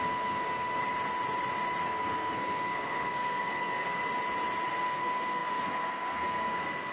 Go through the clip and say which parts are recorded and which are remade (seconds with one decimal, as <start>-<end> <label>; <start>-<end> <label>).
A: 0.0-0.8 remade; 0.8-1.8 recorded; 1.8-4.0 remade; 4.0-4.7 recorded; 4.7-6.9 remade